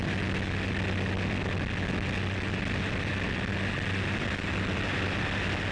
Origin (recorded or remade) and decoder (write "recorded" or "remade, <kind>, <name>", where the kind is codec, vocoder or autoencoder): recorded